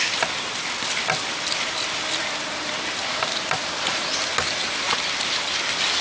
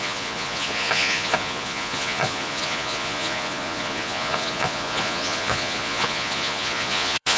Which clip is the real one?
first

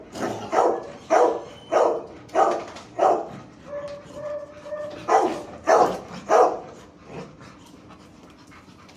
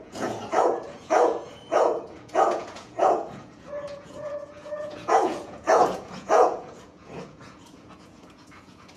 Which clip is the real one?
first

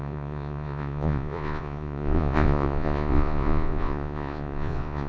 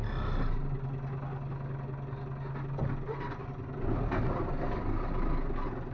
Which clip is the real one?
second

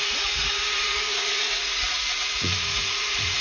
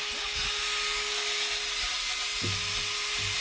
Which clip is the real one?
second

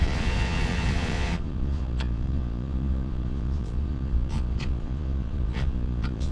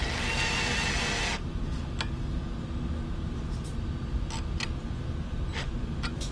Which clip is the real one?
second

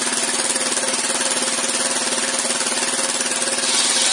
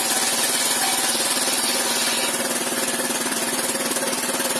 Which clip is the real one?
first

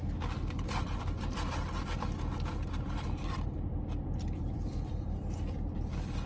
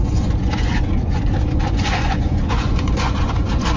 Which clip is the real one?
first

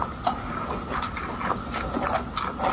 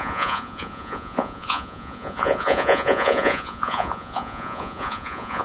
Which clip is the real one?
first